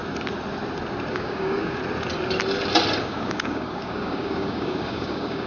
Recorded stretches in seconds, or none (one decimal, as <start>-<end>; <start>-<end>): 0.0-1.1; 1.8-3.0